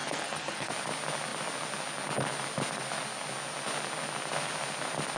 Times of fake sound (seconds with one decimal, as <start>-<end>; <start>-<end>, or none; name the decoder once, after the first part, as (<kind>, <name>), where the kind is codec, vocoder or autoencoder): 0.0-0.7 (codec, SNAC)